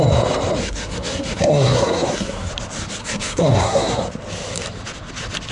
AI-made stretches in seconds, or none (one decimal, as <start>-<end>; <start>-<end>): 0.6-2.5; 3.0-4.1